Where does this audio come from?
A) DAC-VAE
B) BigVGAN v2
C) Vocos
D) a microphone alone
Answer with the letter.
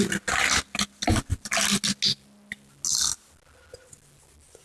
D